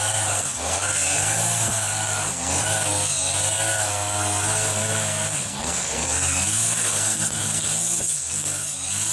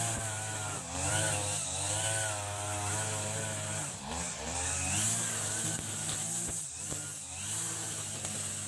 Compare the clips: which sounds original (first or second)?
second